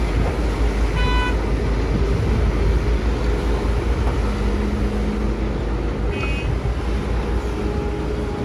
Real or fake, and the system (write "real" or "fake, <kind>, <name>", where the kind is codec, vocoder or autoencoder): real